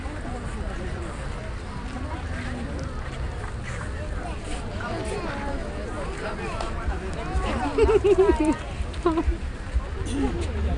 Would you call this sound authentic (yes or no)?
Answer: yes